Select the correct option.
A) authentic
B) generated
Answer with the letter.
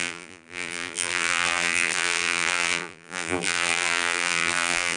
B